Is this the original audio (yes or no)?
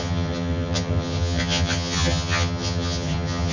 no